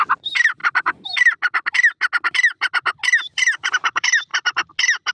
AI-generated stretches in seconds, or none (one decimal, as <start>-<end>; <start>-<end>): 0.0-0.6; 3.7-4.3